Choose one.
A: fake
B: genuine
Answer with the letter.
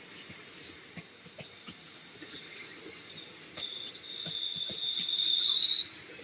B